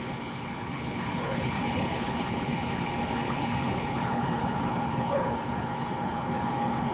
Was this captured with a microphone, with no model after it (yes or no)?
no